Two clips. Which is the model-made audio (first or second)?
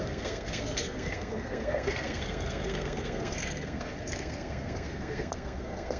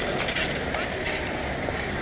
first